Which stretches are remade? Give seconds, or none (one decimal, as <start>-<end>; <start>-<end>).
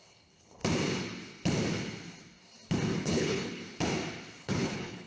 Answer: 0.0-0.6; 3.0-3.6; 4.4-5.1